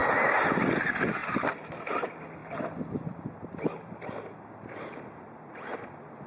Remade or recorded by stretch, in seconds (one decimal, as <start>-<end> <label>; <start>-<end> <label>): 0.0-6.3 recorded